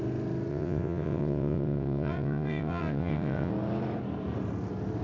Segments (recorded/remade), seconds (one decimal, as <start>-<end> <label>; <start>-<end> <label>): 0.0-0.5 recorded; 0.5-3.5 remade; 3.5-5.0 recorded